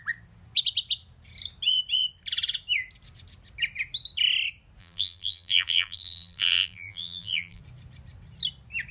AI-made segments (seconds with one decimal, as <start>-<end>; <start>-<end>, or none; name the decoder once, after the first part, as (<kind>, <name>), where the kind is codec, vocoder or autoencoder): 4.8-7.6 (vocoder, BigVGAN v2)